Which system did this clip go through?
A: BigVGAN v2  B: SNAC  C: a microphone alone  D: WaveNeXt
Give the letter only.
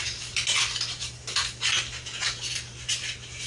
C